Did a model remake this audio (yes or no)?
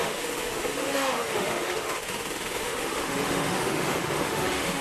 yes